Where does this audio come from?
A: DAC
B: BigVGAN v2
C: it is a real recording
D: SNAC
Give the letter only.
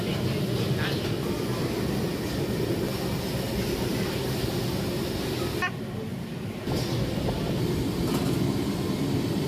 C